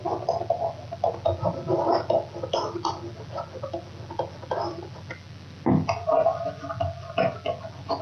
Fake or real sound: real